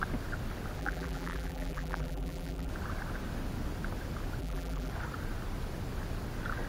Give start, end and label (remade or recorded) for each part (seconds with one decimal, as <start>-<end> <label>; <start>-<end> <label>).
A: 0.0-0.8 recorded; 0.8-2.7 remade; 2.7-4.4 recorded; 4.4-4.9 remade; 4.9-6.7 recorded